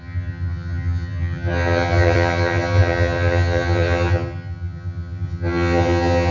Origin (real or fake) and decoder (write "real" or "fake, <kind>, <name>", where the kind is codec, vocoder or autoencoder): fake, vocoder, HiFi-GAN